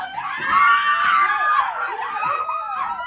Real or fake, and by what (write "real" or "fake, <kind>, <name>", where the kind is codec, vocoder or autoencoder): real